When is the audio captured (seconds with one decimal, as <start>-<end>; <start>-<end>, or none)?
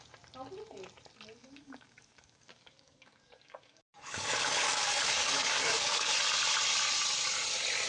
0.0-1.4; 6.1-7.9